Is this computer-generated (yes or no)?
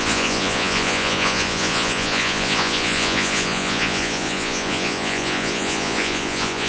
yes